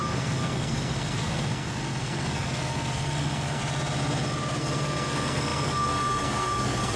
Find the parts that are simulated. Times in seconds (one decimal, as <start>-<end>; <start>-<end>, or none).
0.0-3.6; 4.6-7.0